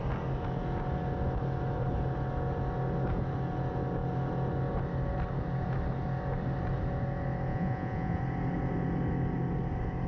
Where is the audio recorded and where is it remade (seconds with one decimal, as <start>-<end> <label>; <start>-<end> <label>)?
0.0-7.5 recorded; 7.5-8.2 remade; 8.2-10.1 recorded